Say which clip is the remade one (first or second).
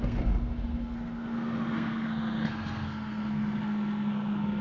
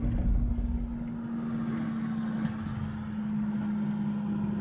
first